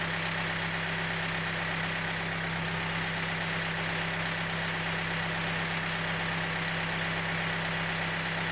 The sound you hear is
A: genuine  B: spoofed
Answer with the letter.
A